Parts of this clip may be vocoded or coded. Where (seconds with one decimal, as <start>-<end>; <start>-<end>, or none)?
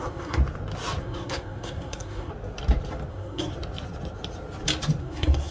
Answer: 0.0-0.4; 1.0-2.3; 3.1-3.5; 5.0-5.5